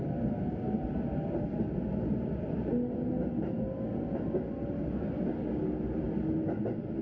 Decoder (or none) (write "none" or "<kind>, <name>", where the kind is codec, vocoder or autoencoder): none